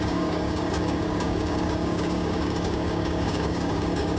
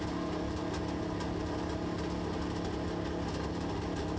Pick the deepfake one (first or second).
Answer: first